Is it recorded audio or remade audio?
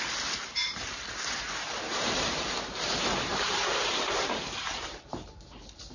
remade